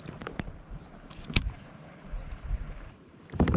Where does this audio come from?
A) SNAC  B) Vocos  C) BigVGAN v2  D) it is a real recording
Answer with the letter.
C